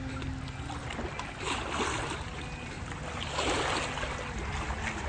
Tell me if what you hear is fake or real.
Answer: real